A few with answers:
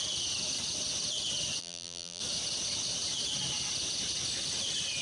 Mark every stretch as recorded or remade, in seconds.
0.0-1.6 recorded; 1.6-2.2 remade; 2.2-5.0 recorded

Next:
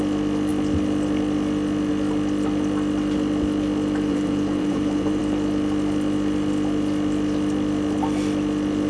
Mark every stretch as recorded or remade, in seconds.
0.0-4.1 recorded; 4.1-5.2 remade; 5.2-8.9 recorded